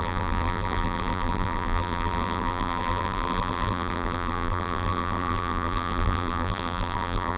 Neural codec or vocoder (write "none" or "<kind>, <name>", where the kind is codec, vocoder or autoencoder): vocoder, BigVGAN v2